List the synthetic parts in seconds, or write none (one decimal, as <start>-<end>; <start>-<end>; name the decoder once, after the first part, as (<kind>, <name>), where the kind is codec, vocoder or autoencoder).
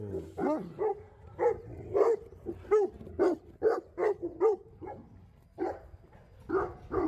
none